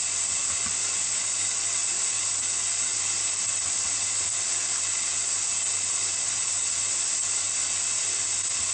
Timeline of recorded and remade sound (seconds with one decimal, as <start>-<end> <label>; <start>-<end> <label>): 0.0-8.7 recorded